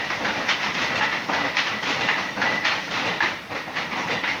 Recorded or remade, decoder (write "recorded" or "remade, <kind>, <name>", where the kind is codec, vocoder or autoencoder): remade, vocoder, BigVGAN v2